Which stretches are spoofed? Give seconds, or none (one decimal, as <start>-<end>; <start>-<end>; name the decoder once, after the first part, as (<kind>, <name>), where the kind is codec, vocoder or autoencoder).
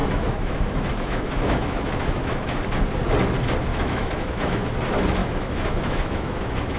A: 0.0-2.6 (autoencoder, DAC-VAE); 3.7-4.7; 5.2-6.8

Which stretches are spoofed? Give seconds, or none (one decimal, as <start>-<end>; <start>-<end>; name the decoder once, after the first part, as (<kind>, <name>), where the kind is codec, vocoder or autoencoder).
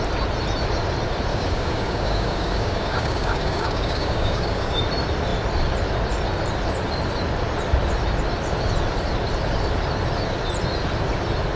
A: 1.3-4.8 (codec, DAC)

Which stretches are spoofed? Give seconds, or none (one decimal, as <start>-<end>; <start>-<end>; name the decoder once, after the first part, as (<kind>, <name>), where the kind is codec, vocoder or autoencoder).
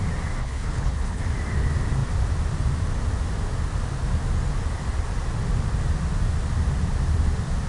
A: 0.4-1.2 (codec, HILCodec)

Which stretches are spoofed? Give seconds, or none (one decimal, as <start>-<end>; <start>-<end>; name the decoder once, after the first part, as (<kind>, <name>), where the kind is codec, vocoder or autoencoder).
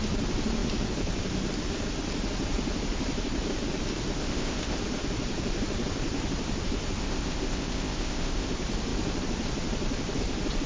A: 4.2-4.8 (codec, ZipCodec); 7.0-8.5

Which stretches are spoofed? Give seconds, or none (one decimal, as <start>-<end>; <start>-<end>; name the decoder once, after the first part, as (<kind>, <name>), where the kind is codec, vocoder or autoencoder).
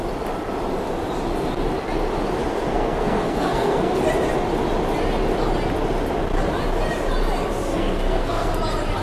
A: 2.5-4.0 (codec, SNAC); 7.7-8.6